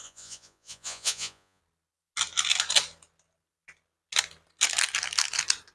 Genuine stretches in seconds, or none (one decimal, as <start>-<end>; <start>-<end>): 1.6-5.7